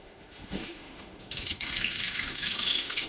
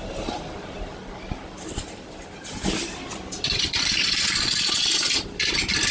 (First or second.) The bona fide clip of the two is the second